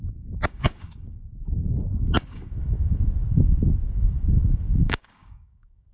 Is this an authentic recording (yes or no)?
no